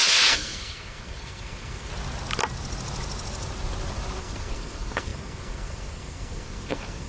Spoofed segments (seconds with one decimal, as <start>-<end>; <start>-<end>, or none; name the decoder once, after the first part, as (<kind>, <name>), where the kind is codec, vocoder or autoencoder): 0.0-1.9 (codec, SNAC); 4.2-7.1